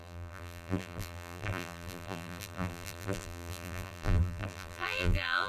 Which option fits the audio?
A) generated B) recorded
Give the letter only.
A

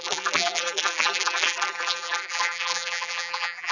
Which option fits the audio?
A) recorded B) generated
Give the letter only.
B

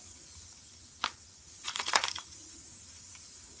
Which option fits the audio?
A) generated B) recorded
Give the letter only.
A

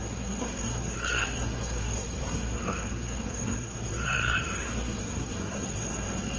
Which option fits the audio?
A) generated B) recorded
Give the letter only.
A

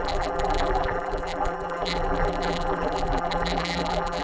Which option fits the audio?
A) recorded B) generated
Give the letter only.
B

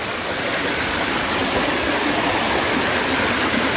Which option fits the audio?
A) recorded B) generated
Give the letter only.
A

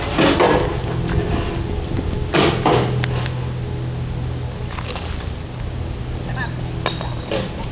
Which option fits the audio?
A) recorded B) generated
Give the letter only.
A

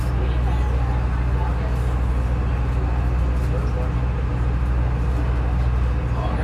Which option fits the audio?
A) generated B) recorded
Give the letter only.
B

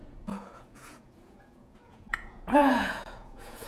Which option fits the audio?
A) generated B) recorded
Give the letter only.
A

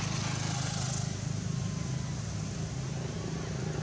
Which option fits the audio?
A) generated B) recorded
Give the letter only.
B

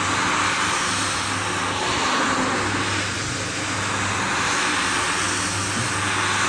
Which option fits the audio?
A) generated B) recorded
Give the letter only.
B